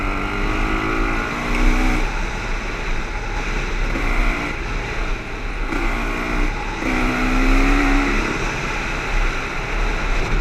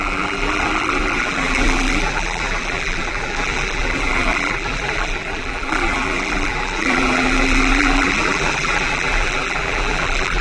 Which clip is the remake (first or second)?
second